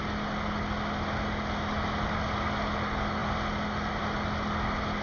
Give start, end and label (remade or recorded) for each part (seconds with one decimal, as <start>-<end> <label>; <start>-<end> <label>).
0.0-5.0 recorded